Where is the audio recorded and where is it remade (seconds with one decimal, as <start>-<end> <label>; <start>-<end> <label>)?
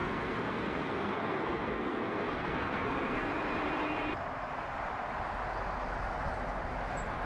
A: 0.0-3.3 remade; 3.3-7.3 recorded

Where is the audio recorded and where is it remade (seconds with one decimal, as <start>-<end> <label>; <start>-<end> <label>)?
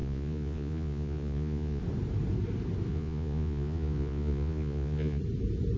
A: 0.0-1.8 remade; 1.8-2.9 recorded; 2.9-5.2 remade; 5.2-5.8 recorded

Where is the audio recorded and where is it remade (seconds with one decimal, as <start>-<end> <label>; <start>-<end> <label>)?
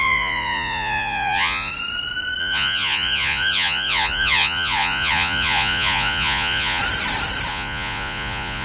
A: 0.0-1.7 remade; 1.7-2.4 recorded; 2.4-6.8 remade; 6.8-7.5 recorded; 7.5-8.6 remade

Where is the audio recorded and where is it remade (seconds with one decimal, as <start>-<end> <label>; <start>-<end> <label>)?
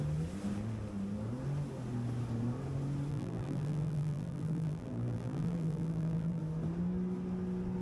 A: 0.0-3.1 recorded; 3.1-6.4 remade; 6.4-7.8 recorded